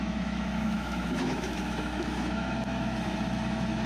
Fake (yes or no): yes